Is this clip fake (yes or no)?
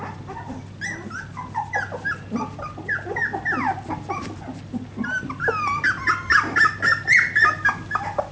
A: no